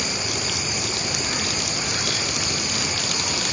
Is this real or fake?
real